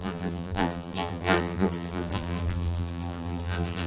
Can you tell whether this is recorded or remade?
remade